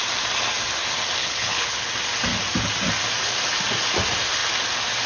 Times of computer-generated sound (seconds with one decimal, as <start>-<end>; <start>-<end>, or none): 1.2-1.9